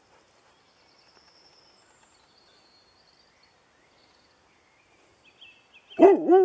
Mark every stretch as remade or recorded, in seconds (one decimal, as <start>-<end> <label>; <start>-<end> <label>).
0.0-6.4 recorded